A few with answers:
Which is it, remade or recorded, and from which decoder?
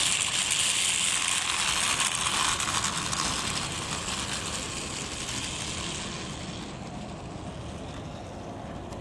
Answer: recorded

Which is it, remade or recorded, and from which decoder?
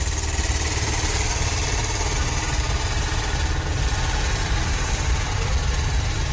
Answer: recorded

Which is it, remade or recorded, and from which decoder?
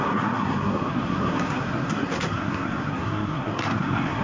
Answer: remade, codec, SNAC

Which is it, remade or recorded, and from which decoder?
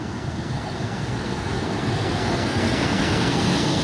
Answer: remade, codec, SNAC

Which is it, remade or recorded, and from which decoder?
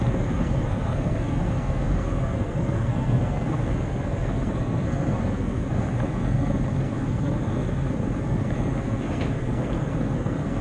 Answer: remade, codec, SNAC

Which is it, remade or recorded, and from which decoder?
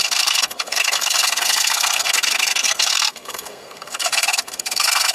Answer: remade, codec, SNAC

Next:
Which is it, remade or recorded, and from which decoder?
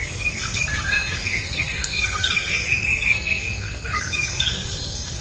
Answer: remade, codec, SNAC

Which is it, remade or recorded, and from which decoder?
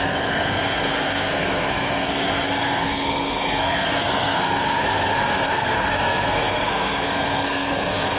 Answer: remade, codec, SNAC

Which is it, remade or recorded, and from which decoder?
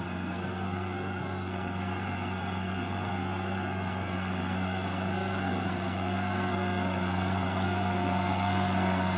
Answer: remade, codec, SNAC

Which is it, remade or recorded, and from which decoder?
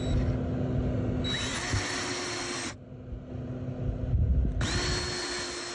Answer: recorded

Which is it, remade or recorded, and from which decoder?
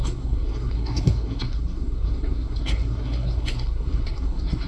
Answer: remade, codec, SNAC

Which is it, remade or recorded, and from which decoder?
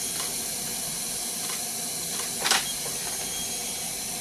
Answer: recorded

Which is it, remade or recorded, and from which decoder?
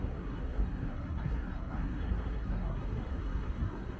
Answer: remade, codec, SNAC